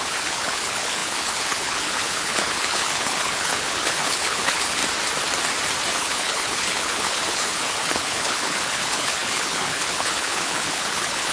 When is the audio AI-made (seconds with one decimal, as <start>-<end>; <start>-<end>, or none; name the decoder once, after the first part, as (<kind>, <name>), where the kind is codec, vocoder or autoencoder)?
0.0-4.8 (codec, HILCodec); 6.0-11.3